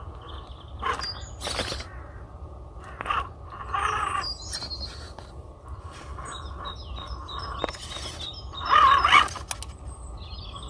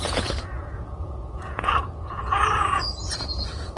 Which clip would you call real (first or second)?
first